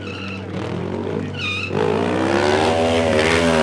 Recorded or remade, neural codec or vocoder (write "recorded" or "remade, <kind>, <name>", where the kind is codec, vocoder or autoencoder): recorded